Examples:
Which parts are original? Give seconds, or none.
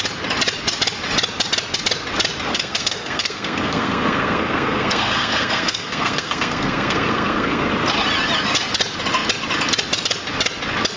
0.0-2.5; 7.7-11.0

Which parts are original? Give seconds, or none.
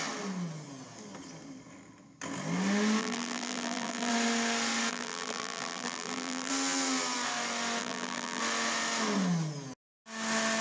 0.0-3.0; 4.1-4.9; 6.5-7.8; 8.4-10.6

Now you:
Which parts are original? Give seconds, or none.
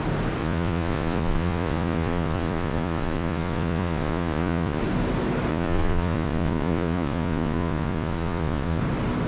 0.0-0.4; 4.8-5.5; 8.8-9.3